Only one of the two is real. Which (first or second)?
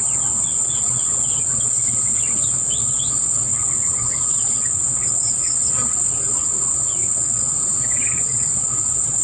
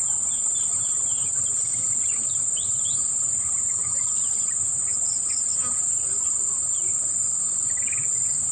second